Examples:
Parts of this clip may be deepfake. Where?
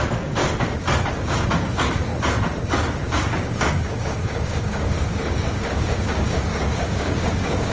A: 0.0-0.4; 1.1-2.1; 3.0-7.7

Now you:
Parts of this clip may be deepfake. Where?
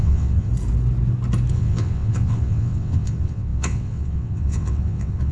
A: 0.0-0.5; 1.5-5.3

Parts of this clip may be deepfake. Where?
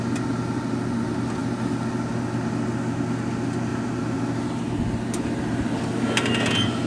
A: 3.7-5.8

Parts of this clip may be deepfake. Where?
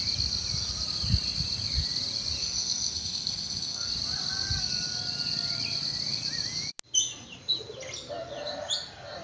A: 2.4-3.9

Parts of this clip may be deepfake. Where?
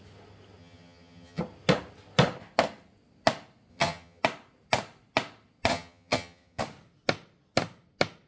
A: 0.6-1.4; 3.7-4.2; 5.7-6.6